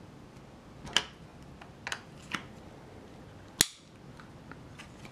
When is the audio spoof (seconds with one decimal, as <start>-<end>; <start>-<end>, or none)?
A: none

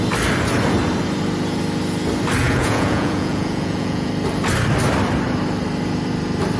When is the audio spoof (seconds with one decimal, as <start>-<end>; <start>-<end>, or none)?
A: 2.4-4.1